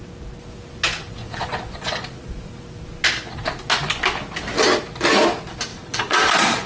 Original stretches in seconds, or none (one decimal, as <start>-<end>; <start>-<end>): 0.0-1.2; 2.5-5.7